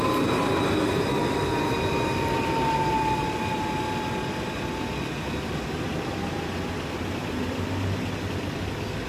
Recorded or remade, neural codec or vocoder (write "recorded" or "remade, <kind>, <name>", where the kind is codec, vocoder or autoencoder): recorded